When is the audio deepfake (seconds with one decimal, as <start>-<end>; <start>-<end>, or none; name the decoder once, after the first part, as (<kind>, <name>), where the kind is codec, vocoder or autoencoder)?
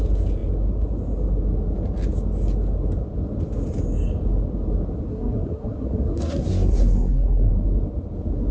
5.1-7.5 (codec, SNAC)